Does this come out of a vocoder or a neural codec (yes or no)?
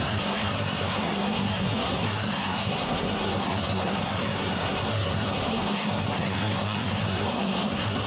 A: yes